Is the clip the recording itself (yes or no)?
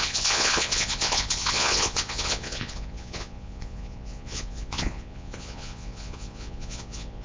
no